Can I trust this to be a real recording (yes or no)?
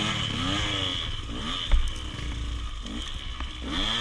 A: yes